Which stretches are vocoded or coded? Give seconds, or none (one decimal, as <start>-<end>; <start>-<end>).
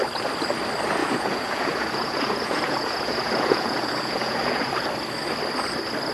1.0-4.7